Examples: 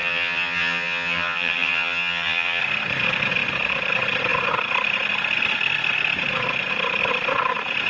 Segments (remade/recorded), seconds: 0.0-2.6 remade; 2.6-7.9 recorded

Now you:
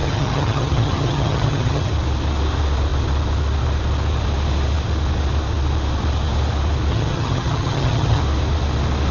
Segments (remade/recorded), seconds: 0.0-1.9 remade; 1.9-6.9 recorded; 6.9-8.2 remade; 8.2-9.1 recorded

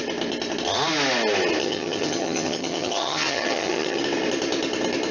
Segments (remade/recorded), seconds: 0.0-1.6 recorded; 1.6-4.0 remade; 4.0-5.1 recorded

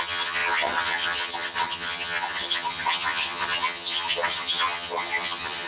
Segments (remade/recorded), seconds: 0.0-5.7 remade

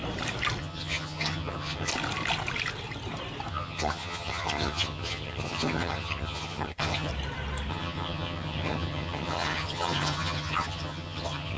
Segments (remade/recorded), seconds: 0.0-0.6 recorded; 0.6-1.9 remade; 1.9-3.5 recorded; 3.5-7.1 remade; 7.1-7.7 recorded; 7.7-11.6 remade